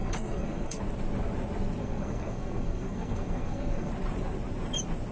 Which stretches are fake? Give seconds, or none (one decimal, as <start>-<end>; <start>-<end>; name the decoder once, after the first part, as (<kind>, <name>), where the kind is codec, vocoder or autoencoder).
0.0-0.8 (codec, SNAC); 1.8-3.9